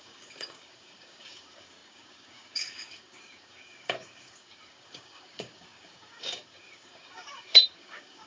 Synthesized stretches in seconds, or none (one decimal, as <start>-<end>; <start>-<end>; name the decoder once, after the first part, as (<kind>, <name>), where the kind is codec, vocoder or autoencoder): 0.0-8.3 (codec, DAC)